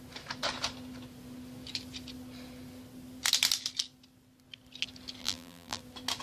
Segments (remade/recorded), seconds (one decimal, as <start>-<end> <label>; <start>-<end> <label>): 0.0-5.2 recorded; 5.2-5.8 remade; 5.8-6.2 recorded